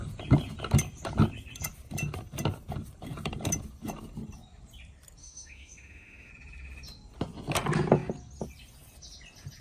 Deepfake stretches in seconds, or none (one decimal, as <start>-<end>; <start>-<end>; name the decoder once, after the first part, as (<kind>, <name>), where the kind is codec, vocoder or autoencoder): 5.2-6.3 (autoencoder, DAC-VAE)